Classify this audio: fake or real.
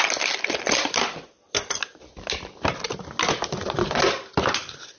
real